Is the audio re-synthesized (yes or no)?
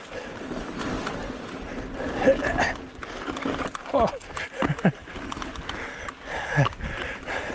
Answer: no